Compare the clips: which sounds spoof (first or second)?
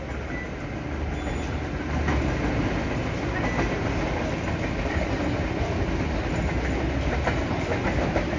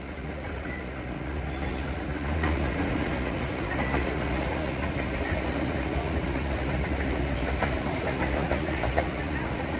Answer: second